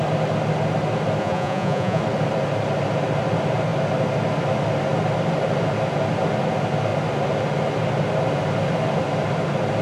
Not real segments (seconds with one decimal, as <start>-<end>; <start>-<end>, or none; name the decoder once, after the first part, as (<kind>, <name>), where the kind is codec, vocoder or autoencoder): 1.2-2.0 (vocoder, Vocos)